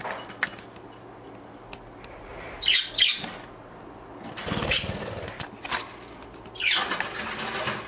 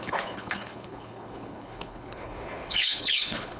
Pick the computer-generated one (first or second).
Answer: second